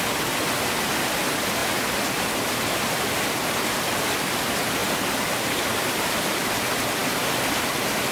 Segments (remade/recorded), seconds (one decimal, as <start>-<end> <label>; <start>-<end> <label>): 0.0-8.1 recorded